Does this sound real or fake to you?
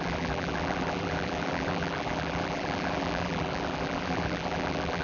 fake